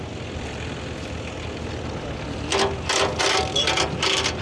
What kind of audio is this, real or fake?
real